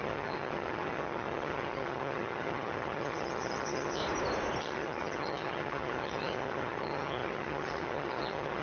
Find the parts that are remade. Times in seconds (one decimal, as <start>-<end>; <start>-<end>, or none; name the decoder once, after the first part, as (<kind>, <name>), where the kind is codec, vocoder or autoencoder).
0.0-4.0 (vocoder, HiFi-GAN); 4.6-8.6